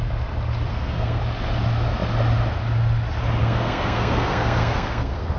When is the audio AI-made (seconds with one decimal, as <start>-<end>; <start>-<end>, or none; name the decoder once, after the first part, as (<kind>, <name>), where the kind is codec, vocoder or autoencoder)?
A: 0.7-1.2 (codec, SNAC); 3.4-5.4